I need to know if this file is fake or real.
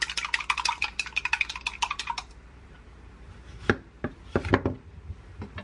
fake